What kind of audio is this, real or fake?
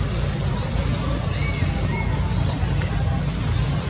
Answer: real